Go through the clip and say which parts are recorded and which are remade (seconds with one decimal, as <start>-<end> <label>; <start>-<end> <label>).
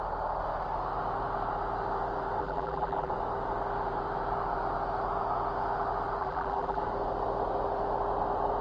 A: 0.0-2.4 recorded; 2.4-3.1 remade; 3.1-6.2 recorded; 6.2-6.8 remade; 6.8-8.6 recorded